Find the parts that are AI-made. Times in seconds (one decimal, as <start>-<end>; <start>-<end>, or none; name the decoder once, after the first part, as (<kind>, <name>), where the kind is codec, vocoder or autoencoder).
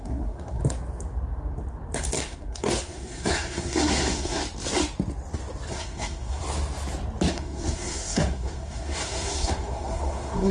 0.0-0.6 (codec, SNAC); 2.2-4.4; 5.7-6.4; 7.3-10.5